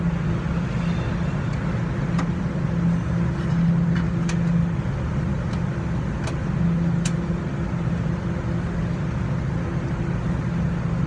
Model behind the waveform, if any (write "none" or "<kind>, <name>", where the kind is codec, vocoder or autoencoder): none